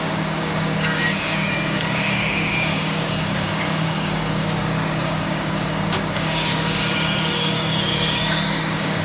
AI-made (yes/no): yes